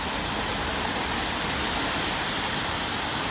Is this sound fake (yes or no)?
no